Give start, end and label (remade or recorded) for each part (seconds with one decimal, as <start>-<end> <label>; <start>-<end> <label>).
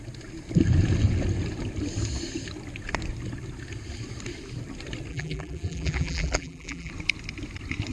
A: 0.0-5.1 recorded; 5.1-6.9 remade; 6.9-7.9 recorded